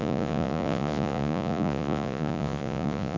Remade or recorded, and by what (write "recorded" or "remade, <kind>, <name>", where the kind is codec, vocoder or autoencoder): remade, vocoder, Vocos